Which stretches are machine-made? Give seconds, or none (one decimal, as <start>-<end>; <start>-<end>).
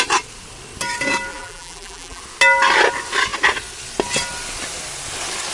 1.3-2.2